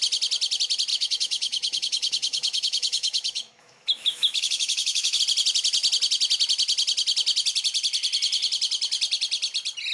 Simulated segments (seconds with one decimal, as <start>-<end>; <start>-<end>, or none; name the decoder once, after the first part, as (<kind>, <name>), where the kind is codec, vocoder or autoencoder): 0.9-5.2 (autoencoder, DAC-VAE)